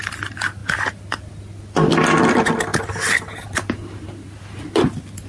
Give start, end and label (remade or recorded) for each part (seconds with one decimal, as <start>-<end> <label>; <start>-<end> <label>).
0.0-5.3 recorded